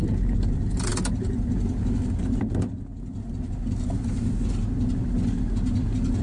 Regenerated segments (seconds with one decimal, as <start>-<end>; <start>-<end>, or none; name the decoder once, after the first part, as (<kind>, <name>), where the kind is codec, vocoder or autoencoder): none